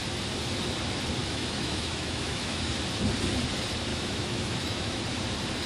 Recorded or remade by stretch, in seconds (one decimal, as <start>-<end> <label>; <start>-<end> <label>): 0.0-1.2 recorded; 1.2-2.6 remade; 2.6-3.9 recorded; 3.9-5.0 remade; 5.0-5.7 recorded